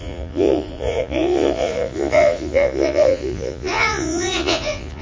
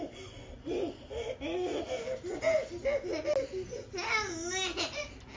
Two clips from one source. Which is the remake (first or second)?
first